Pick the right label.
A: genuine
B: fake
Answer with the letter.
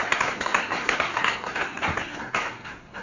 B